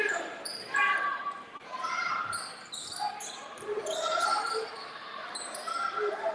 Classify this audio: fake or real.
fake